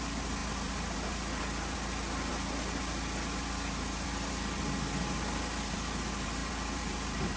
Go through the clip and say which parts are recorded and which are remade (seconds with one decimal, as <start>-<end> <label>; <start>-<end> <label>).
0.0-7.4 recorded